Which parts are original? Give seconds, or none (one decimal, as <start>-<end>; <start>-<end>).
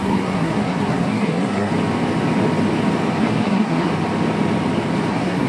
1.7-3.2; 3.9-5.1